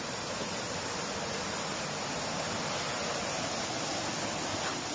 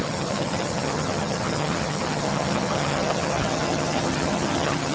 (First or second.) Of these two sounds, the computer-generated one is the second